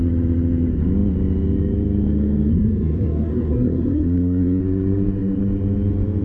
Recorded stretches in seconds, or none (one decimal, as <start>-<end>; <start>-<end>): 0.0-2.5; 4.6-6.2